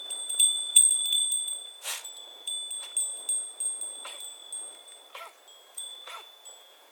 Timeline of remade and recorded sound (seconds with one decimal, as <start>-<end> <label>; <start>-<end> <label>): 0.0-2.5 remade; 2.5-4.0 recorded; 4.0-4.4 remade; 4.4-5.7 recorded; 5.7-6.9 remade